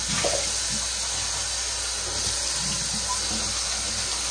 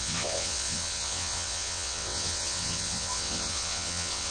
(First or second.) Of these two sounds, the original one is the first